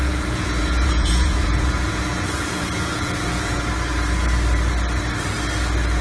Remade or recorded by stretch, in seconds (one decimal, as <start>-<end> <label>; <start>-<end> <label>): 0.0-3.6 remade; 3.6-6.0 recorded